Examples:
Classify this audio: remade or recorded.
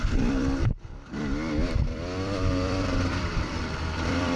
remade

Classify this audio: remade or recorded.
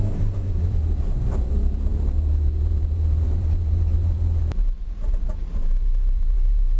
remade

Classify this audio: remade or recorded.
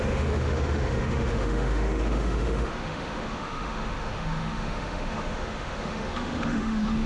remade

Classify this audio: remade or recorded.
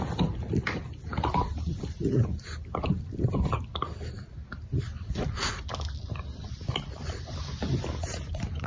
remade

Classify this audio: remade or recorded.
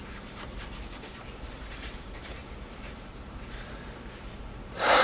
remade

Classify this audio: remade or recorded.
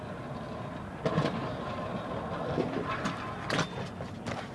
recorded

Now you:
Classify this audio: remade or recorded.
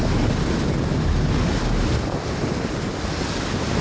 recorded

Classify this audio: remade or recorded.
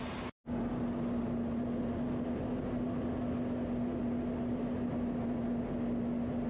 recorded